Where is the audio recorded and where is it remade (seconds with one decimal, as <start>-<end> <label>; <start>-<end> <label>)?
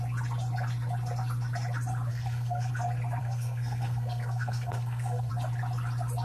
0.0-2.1 recorded; 2.1-2.7 remade; 2.7-3.2 recorded; 3.2-5.3 remade; 5.3-6.2 recorded